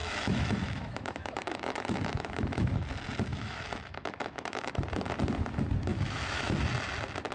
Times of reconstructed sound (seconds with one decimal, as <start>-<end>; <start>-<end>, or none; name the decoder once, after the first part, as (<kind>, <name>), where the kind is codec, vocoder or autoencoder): 0.0-2.7 (autoencoder, DAC-VAE); 3.3-4.7; 5.9-6.6